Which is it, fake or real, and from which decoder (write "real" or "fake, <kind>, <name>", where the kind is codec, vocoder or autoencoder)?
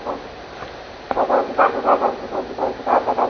real